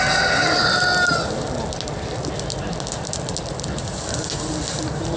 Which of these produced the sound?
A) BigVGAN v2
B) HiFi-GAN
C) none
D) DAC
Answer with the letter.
C